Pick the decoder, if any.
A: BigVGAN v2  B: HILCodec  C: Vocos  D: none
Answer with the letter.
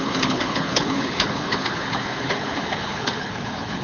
B